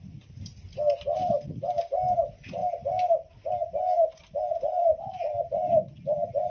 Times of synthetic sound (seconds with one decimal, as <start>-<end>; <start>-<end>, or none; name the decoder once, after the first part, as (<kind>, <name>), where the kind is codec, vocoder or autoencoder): none